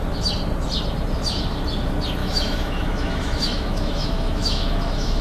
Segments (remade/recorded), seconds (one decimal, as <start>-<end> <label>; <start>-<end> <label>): 0.0-2.2 recorded; 2.2-5.2 remade